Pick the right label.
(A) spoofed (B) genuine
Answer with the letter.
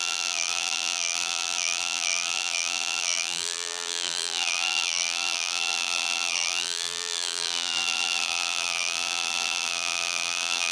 A